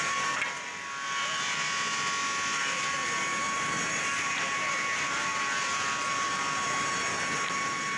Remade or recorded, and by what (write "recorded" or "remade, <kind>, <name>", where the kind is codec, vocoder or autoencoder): recorded